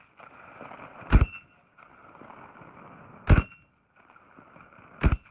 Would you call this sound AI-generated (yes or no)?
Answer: no